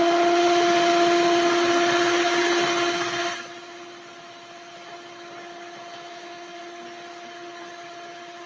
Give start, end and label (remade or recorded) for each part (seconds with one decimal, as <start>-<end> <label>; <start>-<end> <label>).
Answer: 0.0-5.9 recorded; 5.9-6.6 remade; 6.6-8.5 recorded